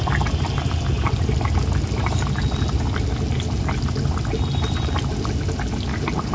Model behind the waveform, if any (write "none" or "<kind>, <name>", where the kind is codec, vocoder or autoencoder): none